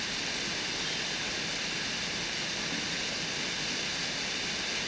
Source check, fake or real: real